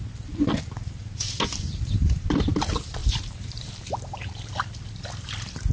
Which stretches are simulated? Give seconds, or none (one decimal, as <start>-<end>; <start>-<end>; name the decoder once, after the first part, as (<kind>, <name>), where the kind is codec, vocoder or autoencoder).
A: 1.0-2.4 (vocoder, BigVGAN v2); 3.0-4.5